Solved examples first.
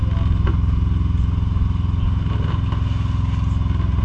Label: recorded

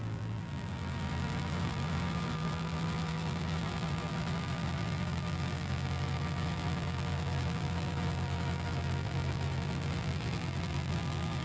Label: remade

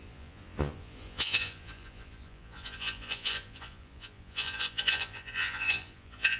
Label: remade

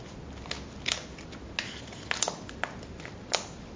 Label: recorded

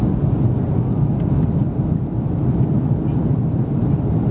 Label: remade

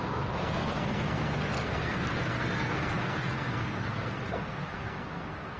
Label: remade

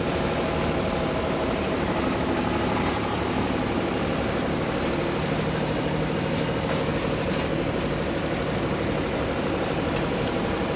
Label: recorded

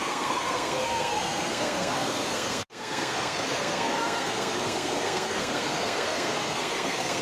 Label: remade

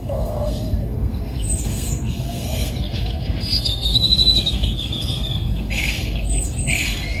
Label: remade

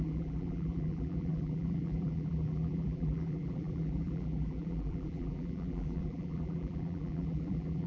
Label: remade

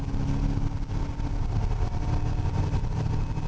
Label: recorded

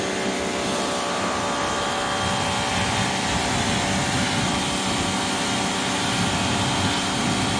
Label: recorded